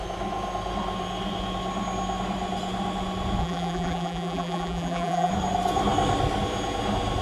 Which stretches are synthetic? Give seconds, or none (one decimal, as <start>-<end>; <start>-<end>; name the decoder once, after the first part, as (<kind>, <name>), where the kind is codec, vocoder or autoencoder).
3.4-5.3 (vocoder, BigVGAN v2)